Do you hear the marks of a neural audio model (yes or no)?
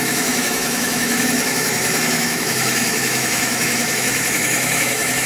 yes